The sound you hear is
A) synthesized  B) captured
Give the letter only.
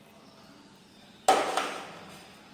B